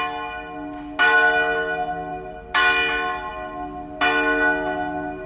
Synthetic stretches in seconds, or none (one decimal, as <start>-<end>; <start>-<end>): none

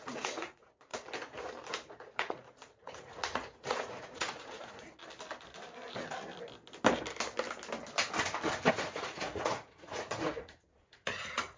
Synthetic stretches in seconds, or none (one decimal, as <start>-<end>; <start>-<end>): 0.0-0.9; 1.9-5.0; 8.7-11.6